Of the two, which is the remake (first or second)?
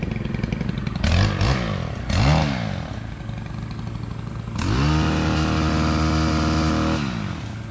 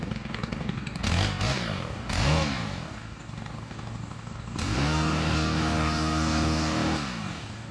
second